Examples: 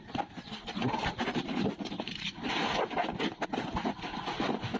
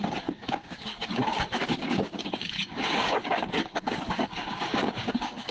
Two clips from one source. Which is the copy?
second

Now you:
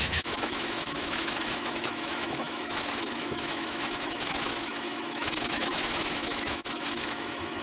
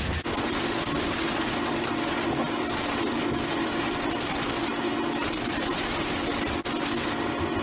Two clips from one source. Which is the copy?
first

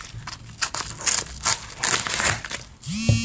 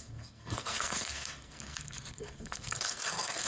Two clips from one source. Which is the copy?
second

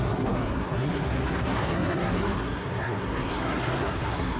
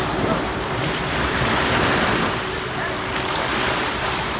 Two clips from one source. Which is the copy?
first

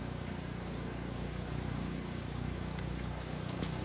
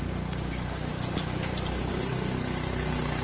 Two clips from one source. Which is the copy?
first